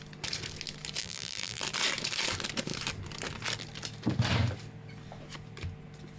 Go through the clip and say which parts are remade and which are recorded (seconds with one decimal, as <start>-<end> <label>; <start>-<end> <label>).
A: 0.0-1.0 recorded; 1.0-1.6 remade; 1.6-6.2 recorded